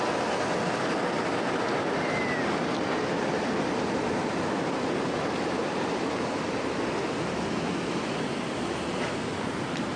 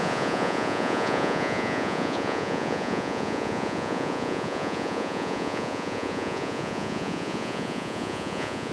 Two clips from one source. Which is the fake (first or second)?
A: second